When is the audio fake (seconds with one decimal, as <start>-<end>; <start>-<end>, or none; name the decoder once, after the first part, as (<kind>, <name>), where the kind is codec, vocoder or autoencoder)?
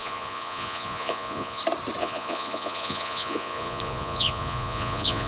0.0-1.6 (vocoder, Vocos); 2.0-5.3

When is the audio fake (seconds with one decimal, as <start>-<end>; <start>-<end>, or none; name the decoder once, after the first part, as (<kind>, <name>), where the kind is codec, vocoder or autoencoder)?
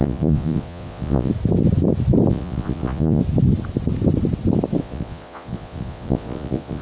0.0-1.3 (vocoder, Vocos); 2.3-3.2; 4.8-6.8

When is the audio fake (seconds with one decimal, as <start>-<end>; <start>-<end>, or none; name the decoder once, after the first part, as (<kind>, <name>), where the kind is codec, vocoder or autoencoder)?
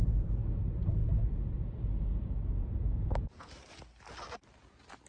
0.0-0.6 (vocoder, Vocos); 1.0-3.5